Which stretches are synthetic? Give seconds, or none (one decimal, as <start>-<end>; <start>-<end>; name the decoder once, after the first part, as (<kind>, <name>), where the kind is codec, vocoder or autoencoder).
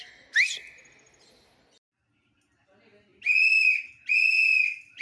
none